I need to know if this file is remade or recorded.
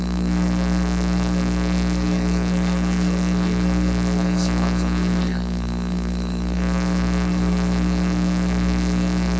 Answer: remade